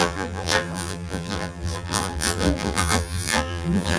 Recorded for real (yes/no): no